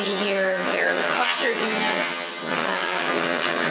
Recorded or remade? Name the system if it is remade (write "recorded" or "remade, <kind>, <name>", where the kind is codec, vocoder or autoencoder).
remade, vocoder, HiFi-GAN